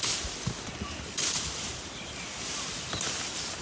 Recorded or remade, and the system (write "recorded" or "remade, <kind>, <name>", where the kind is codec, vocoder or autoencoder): recorded